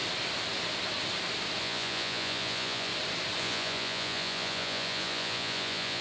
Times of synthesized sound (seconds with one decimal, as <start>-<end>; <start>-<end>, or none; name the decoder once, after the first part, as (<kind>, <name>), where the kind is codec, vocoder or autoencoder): 1.6-2.9 (vocoder, Vocos); 3.4-6.0